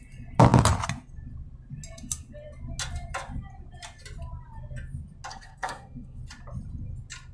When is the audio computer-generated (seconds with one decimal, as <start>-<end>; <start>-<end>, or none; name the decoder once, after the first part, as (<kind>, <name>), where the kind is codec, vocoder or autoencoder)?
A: 5.3-6.2 (codec, SNAC)

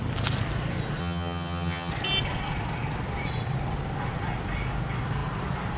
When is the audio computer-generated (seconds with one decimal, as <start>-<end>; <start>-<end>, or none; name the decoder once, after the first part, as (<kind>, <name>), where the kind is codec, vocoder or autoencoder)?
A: 1.0-1.9 (vocoder, HiFi-GAN)

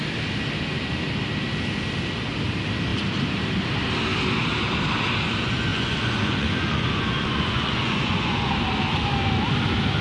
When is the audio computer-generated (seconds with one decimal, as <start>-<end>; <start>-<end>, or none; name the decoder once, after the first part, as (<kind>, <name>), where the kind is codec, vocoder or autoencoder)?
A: 5.7-8.5 (vocoder, Vocos)